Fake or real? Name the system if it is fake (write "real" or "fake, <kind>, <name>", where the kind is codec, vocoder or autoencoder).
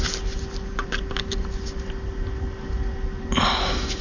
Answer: real